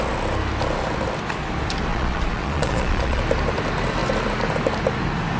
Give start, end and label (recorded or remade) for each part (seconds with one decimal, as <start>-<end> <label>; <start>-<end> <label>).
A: 0.0-1.9 recorded; 1.9-3.2 remade; 3.2-5.4 recorded